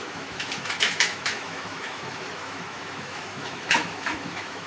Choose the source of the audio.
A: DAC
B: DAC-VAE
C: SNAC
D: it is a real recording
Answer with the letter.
B